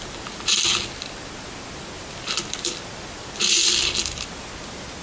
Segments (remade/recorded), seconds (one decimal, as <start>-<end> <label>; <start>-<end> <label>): 0.0-5.0 recorded